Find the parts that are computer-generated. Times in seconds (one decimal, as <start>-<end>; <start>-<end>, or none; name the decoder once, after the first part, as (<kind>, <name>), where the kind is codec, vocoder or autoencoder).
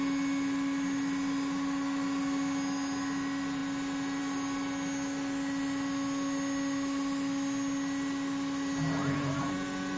9.0-10.0 (vocoder, Vocos)